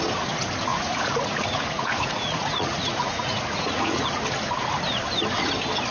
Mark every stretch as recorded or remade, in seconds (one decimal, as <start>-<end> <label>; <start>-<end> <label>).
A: 0.0-0.7 recorded; 0.7-4.2 remade; 4.2-5.9 recorded